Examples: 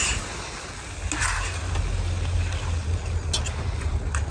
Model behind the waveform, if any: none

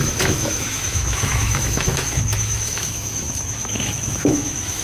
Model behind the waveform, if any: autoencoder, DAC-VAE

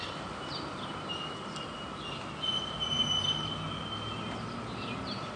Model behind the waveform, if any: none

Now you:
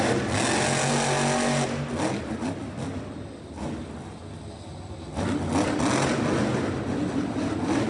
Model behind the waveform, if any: none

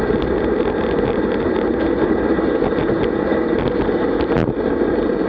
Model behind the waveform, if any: none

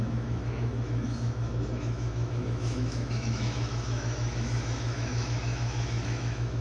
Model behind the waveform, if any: autoencoder, DAC-VAE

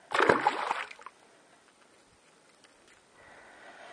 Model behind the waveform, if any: none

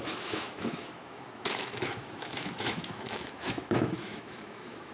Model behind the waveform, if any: autoencoder, DAC-VAE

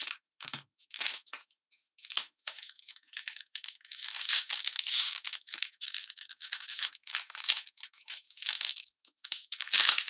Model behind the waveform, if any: autoencoder, DAC-VAE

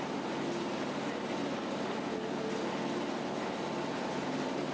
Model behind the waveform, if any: none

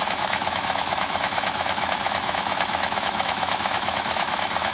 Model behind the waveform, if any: autoencoder, DAC-VAE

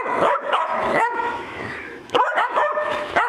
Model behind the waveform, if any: autoencoder, DAC-VAE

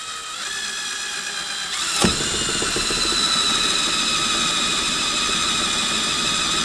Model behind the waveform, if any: none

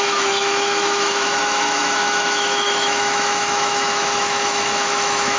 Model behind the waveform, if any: autoencoder, DAC-VAE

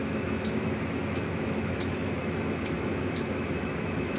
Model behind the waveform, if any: autoencoder, DAC-VAE